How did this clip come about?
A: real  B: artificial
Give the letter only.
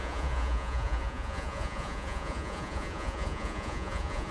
B